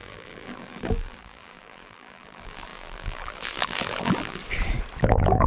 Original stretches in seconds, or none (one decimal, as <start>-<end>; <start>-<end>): 4.4-5.0